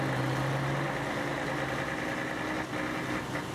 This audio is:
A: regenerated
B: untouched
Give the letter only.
B